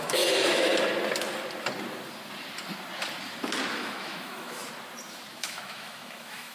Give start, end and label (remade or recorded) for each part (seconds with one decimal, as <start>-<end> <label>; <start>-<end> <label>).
0.0-0.7 remade; 0.7-3.7 recorded; 3.7-4.6 remade; 4.6-5.3 recorded; 5.3-6.5 remade